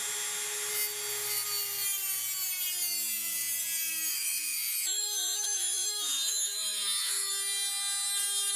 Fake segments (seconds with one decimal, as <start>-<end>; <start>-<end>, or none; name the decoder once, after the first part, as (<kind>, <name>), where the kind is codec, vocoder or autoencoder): 4.1-7.3 (autoencoder, DAC-VAE)